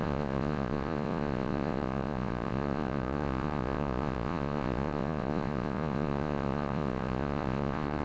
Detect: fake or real fake